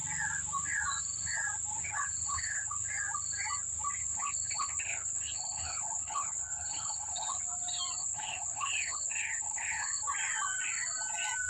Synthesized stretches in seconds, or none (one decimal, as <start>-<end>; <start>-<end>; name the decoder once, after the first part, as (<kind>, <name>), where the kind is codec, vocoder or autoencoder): 1.8-2.9 (codec, HILCodec); 4.0-7.4; 8.0-10.0

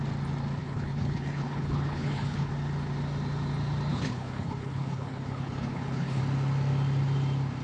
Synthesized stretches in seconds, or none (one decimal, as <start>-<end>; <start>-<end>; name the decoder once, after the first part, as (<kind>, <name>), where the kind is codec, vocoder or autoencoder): 0.6-2.5 (codec, HILCodec); 3.9-6.2

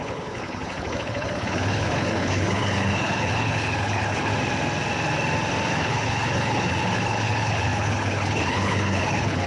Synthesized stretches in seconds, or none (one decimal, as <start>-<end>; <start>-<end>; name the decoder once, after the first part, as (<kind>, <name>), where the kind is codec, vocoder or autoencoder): 0.0-4.3 (codec, HILCodec); 5.7-9.5

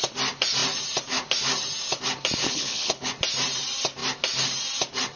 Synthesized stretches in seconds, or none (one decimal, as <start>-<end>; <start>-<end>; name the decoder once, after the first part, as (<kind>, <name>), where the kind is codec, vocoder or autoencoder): 2.4-3.1 (codec, HILCodec)

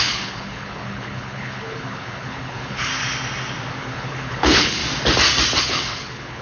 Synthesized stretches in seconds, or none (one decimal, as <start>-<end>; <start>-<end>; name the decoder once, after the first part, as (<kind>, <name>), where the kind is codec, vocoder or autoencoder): 0.0-2.9 (codec, HILCodec); 3.8-4.8; 5.6-6.4

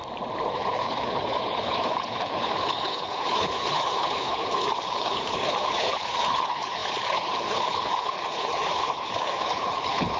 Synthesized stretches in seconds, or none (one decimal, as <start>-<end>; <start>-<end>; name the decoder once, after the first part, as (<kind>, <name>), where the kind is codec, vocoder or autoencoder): 0.5-10.2 (codec, HILCodec)